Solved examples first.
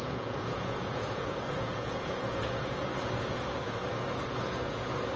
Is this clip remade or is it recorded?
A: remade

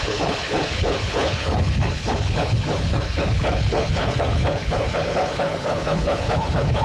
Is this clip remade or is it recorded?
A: remade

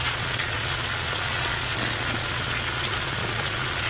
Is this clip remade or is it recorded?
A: remade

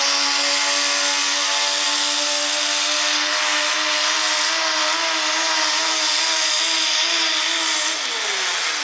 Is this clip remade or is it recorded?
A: recorded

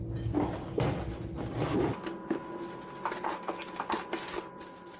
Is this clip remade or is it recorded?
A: recorded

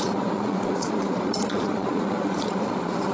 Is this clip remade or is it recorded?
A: remade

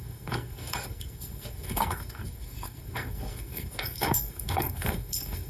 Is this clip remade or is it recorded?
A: remade